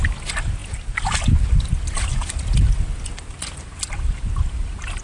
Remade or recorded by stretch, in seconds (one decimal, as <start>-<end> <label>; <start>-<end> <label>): 0.0-5.0 recorded